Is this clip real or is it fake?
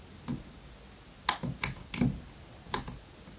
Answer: real